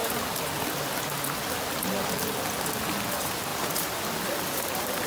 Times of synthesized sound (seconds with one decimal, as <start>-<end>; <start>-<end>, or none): 3.1-5.1